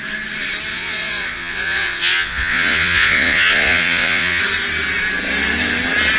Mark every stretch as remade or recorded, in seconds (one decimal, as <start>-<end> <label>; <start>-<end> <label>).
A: 0.0-0.7 recorded; 0.7-4.4 remade; 4.4-6.2 recorded